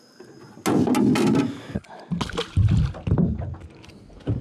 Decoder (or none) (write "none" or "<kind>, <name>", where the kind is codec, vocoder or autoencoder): none